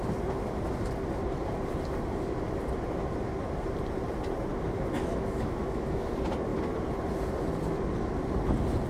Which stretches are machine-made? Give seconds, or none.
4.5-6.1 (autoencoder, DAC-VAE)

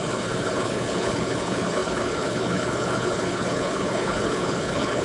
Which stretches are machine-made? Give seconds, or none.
0.0-5.0 (codec, HILCodec)

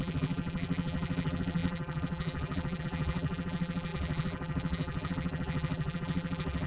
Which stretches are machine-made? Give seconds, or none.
0.0-6.7 (vocoder, BigVGAN v2)

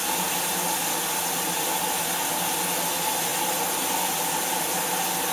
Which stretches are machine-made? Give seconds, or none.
none

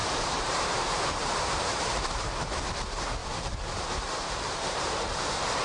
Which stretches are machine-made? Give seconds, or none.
0.0-2.0 (vocoder, BigVGAN v2); 3.2-5.6

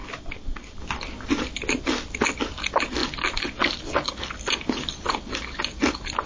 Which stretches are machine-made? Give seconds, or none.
0.0-0.8 (vocoder, BigVGAN v2); 3.0-5.6

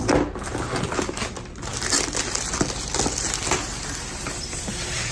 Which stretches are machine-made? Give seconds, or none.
none

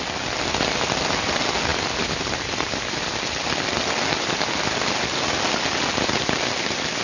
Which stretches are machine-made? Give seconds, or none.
none